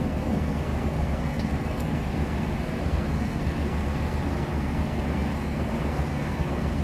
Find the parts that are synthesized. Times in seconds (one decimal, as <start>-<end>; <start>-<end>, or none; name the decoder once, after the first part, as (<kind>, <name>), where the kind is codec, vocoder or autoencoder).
0.0-6.8 (codec, SNAC)